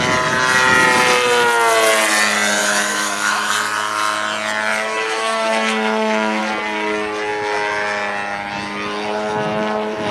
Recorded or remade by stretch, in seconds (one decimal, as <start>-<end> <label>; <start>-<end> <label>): 0.0-2.6 recorded; 2.6-3.5 remade; 3.5-4.7 recorded; 4.7-6.4 remade; 6.4-10.1 recorded